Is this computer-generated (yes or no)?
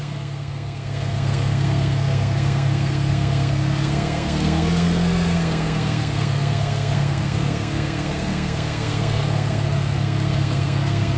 yes